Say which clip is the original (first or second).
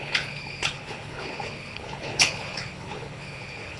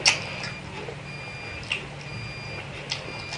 second